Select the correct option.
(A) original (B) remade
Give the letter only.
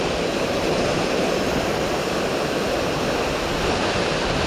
A